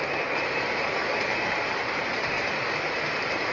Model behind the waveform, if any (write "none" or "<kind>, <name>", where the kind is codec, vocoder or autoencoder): vocoder, BigVGAN v2